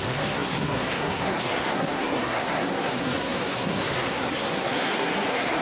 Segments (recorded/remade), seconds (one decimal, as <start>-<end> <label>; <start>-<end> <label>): 0.0-5.6 remade